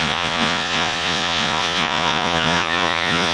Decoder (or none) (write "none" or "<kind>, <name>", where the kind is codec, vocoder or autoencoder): vocoder, Vocos